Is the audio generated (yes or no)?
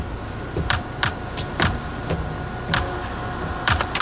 no